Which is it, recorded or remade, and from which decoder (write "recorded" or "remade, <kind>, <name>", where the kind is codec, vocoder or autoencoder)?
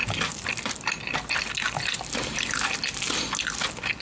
recorded